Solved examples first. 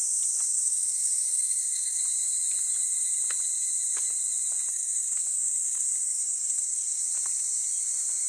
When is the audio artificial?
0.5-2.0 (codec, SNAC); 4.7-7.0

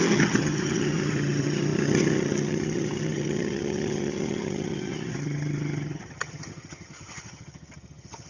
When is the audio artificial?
0.0-8.3 (vocoder, HiFi-GAN)

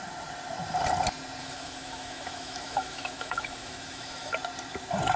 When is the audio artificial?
1.4-4.3 (autoencoder, DAC-VAE)

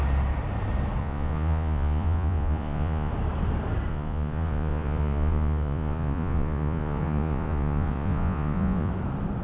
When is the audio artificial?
1.0-3.1 (vocoder, Vocos); 3.9-8.9

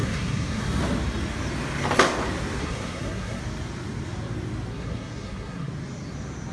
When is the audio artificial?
0.0-0.6 (codec, SNAC); 2.6-3.4; 4.7-5.7

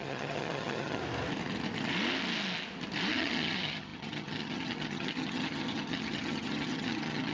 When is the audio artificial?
0.0-1.0 (vocoder, HiFi-GAN); 3.1-7.3